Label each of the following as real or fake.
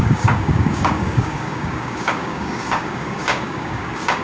fake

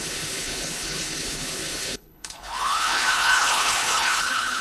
fake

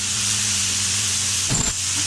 fake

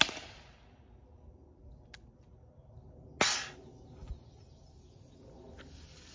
real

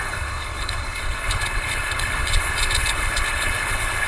fake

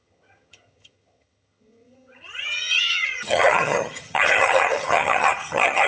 fake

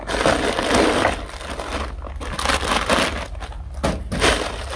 real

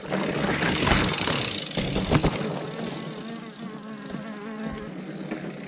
real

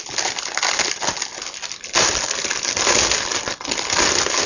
real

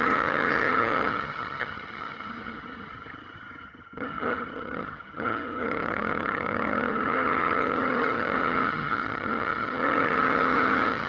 fake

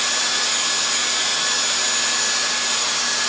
real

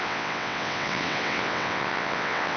fake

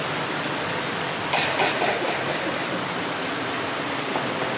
real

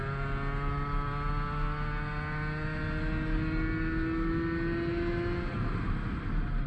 real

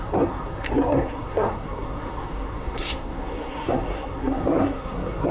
fake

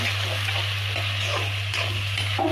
real